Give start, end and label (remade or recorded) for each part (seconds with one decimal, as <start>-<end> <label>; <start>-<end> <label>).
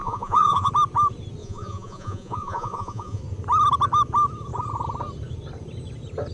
0.0-0.7 remade; 0.7-1.4 recorded; 1.4-3.2 remade; 3.2-6.3 recorded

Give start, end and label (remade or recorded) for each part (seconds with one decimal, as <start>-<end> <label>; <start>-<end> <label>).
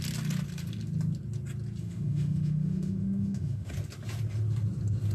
0.0-1.8 recorded; 1.8-3.7 remade; 3.7-5.1 recorded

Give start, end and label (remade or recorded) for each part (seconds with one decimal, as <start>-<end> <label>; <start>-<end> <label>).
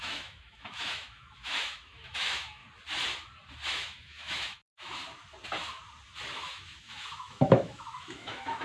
0.0-2.6 remade; 2.6-3.7 recorded; 3.7-5.0 remade; 5.0-6.4 recorded; 6.4-8.6 remade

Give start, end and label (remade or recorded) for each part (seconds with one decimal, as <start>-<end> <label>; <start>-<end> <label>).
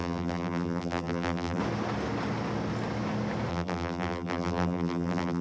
0.0-1.6 remade; 1.6-3.5 recorded; 3.5-5.4 remade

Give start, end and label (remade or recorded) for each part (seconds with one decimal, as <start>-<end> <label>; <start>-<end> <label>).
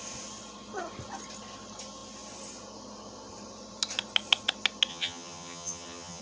0.0-4.9 recorded; 4.9-6.2 remade